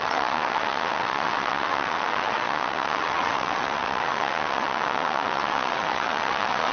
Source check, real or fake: fake